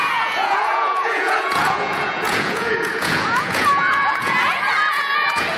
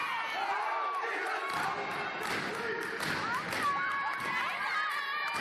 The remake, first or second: first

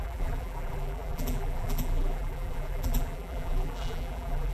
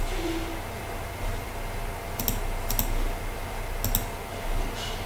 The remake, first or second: first